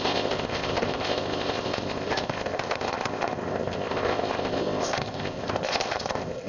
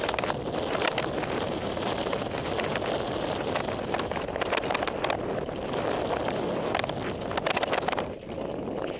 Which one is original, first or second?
second